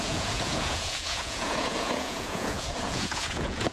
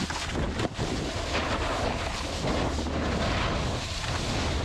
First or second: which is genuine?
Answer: second